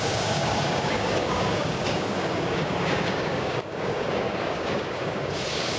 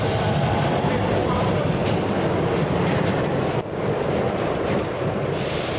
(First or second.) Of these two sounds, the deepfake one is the first